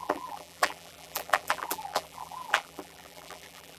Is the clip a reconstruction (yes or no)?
yes